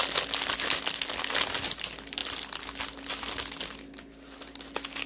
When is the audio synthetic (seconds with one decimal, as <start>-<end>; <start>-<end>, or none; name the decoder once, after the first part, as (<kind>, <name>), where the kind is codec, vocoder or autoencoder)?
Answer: none